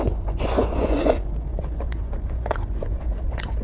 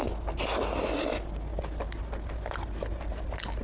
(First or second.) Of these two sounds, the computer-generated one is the first